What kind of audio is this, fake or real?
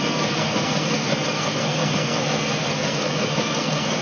fake